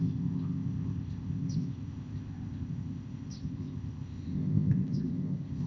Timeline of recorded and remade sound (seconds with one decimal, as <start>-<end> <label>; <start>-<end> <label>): 0.0-5.7 remade